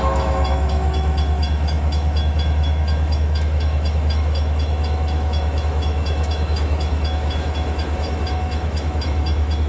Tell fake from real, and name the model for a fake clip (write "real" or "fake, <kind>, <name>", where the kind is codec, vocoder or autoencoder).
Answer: fake, autoencoder, DAC-VAE